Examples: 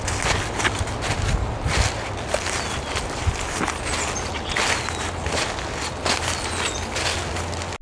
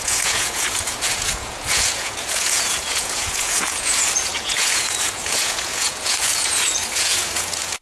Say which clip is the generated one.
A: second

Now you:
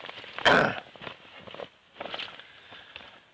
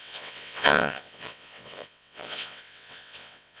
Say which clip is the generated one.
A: second